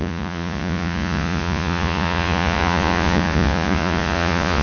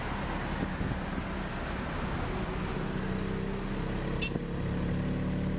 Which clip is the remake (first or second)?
first